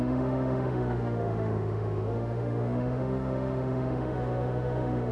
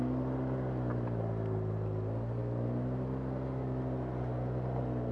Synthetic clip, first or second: first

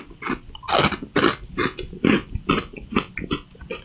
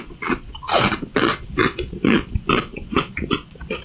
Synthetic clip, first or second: second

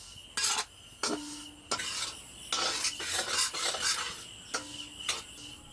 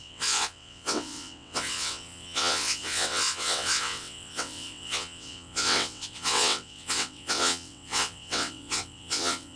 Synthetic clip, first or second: second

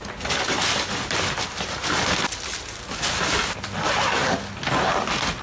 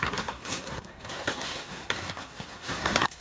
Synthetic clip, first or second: second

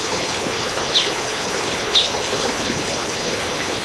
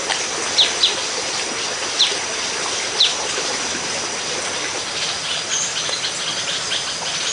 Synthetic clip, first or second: first